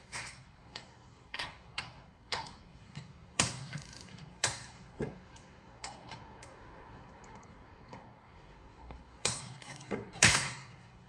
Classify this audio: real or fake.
fake